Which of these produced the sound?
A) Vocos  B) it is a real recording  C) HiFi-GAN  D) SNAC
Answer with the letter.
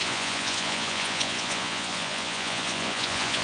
A